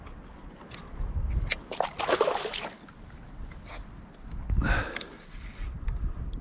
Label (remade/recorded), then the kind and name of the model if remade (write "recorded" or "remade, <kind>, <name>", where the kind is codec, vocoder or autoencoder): recorded